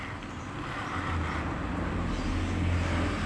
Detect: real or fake real